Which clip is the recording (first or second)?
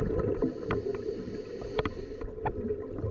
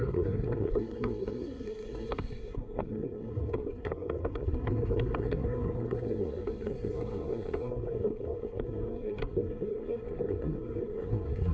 first